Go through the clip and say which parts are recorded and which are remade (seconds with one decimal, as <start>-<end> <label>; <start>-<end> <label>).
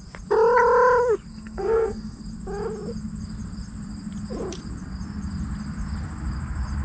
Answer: 0.0-1.3 recorded; 1.3-2.2 remade; 2.2-6.8 recorded